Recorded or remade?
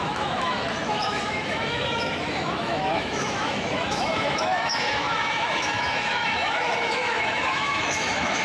remade